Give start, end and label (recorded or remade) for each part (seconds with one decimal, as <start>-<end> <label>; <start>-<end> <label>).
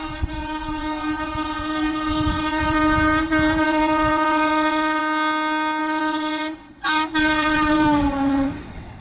0.0-2.8 remade; 2.8-3.6 recorded; 3.6-5.0 remade; 5.0-5.8 recorded; 5.8-9.0 remade